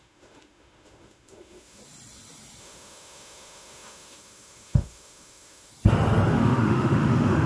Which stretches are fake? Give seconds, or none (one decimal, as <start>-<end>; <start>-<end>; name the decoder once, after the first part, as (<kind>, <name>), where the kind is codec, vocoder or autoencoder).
0.0-1.8 (autoencoder, DAC-VAE); 2.6-5.7; 6.3-7.5

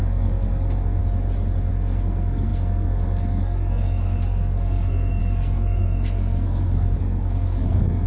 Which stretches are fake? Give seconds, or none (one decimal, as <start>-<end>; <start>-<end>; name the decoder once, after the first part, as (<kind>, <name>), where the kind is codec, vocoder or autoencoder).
0.0-1.0 (codec, SNAC); 1.7-8.1

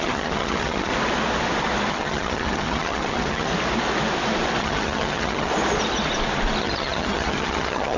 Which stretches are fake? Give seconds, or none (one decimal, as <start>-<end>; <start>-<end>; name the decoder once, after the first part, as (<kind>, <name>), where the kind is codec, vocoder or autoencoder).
0.0-0.9 (vocoder, HiFi-GAN); 1.9-3.5; 4.6-5.5; 6.6-8.0

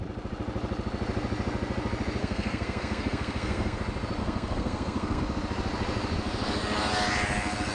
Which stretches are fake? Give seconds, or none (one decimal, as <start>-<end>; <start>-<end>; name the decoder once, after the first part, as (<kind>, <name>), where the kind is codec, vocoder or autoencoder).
2.2-3.8 (codec, SNAC); 4.2-5.2